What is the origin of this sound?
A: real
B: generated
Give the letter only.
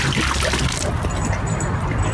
A